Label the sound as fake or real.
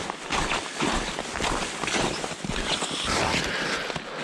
real